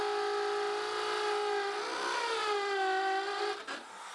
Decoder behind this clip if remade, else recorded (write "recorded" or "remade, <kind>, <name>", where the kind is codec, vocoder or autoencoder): recorded